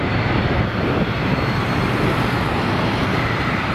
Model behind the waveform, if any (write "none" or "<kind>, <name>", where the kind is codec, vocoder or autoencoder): vocoder, BigVGAN v2